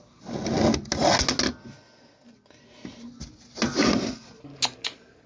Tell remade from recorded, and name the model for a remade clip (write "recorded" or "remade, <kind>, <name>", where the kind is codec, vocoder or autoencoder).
recorded